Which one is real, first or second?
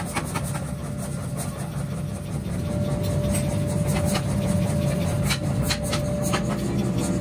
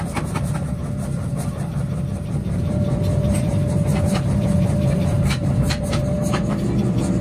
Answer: first